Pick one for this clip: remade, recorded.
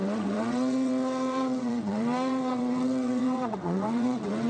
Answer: remade